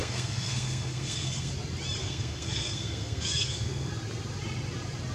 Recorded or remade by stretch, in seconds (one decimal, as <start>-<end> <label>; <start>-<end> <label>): 0.0-1.5 remade; 1.5-2.0 recorded; 2.0-3.9 remade; 3.9-5.1 recorded